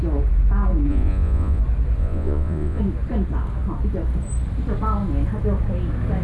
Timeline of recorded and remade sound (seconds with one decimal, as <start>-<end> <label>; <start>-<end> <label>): 0.0-0.9 recorded; 0.9-1.6 remade; 1.6-2.0 recorded; 2.0-2.8 remade; 2.8-6.2 recorded

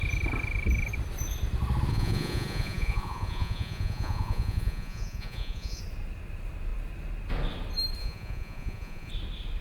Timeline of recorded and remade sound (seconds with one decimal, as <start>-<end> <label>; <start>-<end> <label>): 0.0-1.9 recorded; 1.9-5.8 remade; 5.8-8.0 recorded; 8.0-9.1 remade; 9.1-9.6 recorded

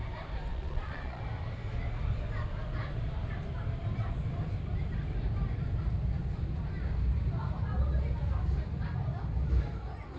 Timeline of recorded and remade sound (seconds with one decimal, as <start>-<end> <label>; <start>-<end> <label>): 0.0-0.5 recorded; 0.5-1.2 remade; 1.2-10.2 recorded